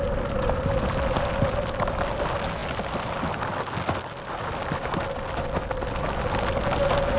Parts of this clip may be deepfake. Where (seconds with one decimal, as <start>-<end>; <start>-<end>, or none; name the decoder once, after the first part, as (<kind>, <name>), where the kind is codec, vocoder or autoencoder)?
none